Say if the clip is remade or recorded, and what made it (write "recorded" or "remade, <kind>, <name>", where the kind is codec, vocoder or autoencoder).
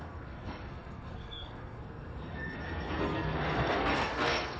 remade, codec, SNAC